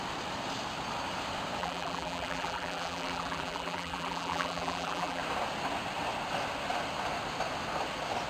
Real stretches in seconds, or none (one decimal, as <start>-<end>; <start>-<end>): 0.0-1.6; 5.2-8.3

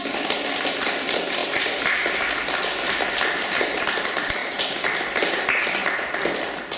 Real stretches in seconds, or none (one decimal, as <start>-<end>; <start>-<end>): 4.4-5.1

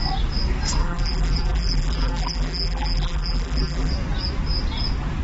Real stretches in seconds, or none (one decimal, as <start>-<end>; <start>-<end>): 0.0-0.8; 3.9-5.2

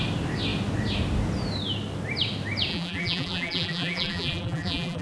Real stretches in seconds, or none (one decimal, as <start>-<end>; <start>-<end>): 0.0-2.7

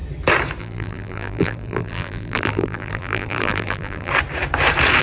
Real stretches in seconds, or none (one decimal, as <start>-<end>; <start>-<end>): 0.0-0.6; 4.1-5.0

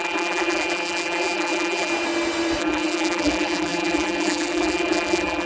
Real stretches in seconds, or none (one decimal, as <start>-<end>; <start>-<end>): 1.9-2.6

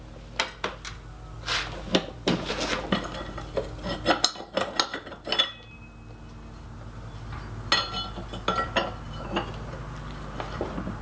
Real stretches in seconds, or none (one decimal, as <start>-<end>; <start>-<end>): 0.0-1.9; 2.5-11.0